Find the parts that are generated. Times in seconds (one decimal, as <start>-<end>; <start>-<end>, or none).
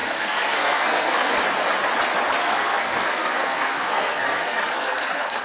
0.0-1.3; 2.4-5.4